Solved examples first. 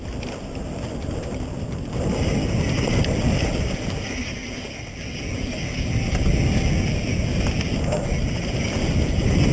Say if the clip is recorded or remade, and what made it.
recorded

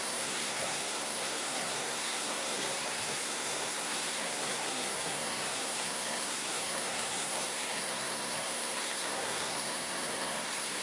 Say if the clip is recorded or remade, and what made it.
remade, codec, SNAC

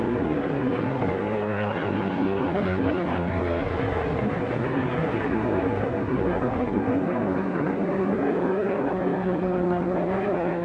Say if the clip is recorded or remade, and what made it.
remade, codec, SNAC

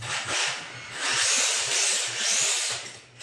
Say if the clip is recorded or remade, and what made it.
recorded